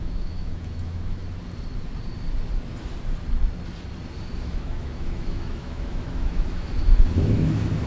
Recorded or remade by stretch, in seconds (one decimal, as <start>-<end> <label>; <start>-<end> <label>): 0.0-1.2 remade; 1.2-4.4 recorded; 4.4-7.9 remade